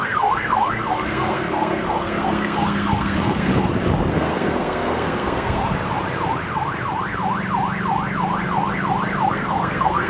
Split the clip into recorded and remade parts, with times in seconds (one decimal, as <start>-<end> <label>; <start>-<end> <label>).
0.0-3.5 remade; 3.5-4.1 recorded; 4.1-5.6 remade; 5.6-9.3 recorded; 9.3-10.1 remade